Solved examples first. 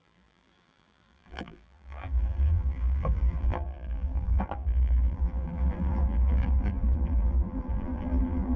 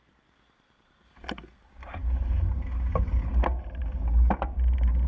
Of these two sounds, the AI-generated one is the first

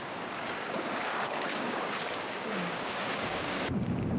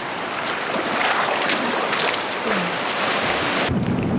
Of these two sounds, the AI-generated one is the first